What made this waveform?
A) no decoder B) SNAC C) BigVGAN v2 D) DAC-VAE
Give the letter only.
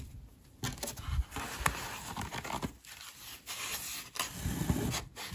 A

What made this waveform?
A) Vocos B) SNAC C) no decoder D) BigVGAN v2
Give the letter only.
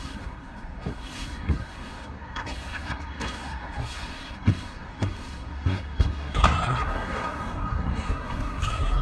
B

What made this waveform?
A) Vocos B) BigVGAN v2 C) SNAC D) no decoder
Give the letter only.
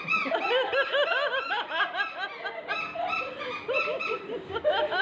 D